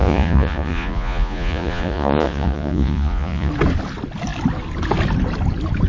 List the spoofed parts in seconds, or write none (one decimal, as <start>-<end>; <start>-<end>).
0.0-3.5

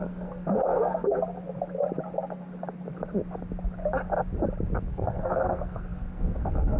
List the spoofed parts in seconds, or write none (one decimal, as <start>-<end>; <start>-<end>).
0.0-1.2; 4.8-6.8